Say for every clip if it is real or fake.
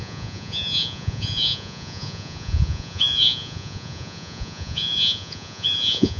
fake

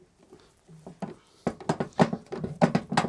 real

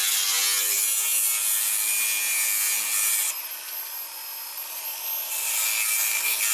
real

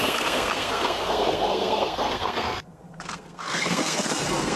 fake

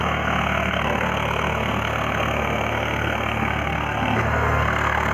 fake